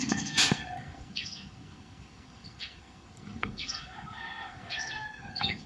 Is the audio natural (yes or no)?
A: no